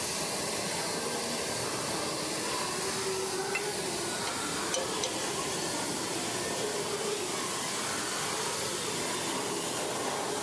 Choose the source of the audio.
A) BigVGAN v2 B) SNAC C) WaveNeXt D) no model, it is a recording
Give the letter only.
D